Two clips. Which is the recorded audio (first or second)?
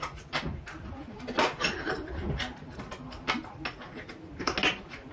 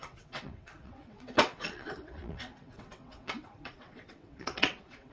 first